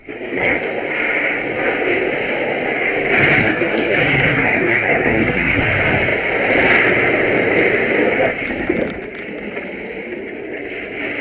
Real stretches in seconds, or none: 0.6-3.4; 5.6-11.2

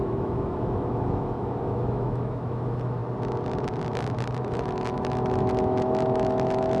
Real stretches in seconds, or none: 3.0-4.4

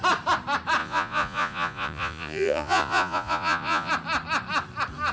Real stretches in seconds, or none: 0.0-0.8; 3.9-5.1

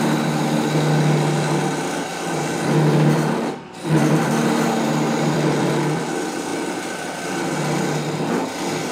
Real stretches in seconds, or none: 0.0-2.1; 6.1-8.9

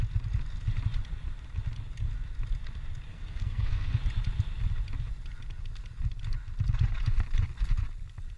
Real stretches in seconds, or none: 0.0-3.1; 4.0-8.4

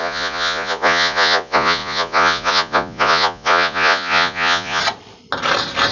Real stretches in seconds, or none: 4.8-5.9

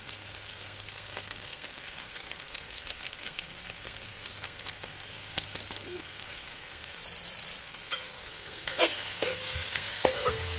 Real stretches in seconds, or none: 7.0-7.6